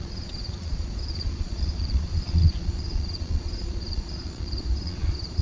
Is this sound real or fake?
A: fake